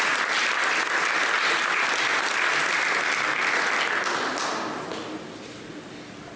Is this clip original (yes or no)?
yes